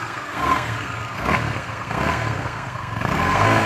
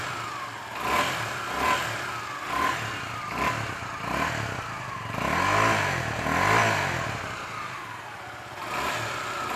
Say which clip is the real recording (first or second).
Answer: second